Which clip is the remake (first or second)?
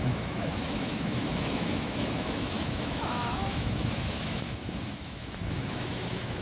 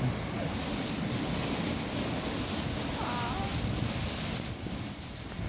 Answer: first